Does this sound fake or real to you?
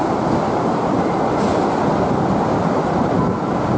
real